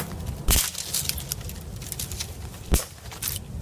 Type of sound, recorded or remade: recorded